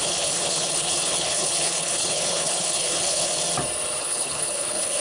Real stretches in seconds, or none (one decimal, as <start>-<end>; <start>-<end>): 3.3-4.0